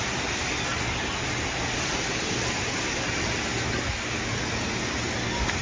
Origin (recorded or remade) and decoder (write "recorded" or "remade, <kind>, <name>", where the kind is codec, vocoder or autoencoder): recorded